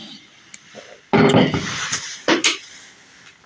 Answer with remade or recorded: recorded